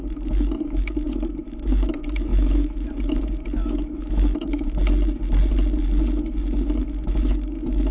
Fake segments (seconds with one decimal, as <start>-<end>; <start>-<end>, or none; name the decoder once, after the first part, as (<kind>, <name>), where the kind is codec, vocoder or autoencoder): 0.0-4.8 (autoencoder, DAC-VAE); 6.8-7.9